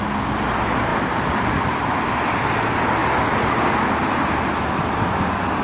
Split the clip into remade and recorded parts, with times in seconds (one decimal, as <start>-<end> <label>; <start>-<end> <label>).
0.0-5.6 recorded